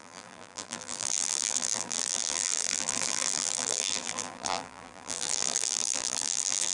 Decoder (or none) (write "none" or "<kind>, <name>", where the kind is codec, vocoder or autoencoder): vocoder, BigVGAN v2